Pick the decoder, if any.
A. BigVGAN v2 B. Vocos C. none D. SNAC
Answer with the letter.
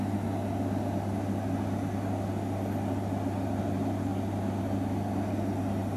C